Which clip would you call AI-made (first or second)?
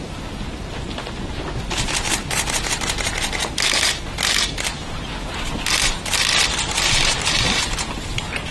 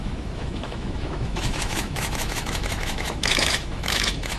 second